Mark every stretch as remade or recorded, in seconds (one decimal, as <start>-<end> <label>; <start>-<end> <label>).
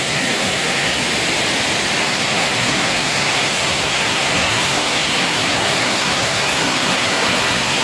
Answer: 0.0-1.0 remade; 1.0-2.0 recorded; 2.0-7.8 remade